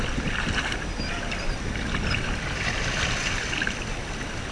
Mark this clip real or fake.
real